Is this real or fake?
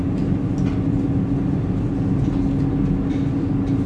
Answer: real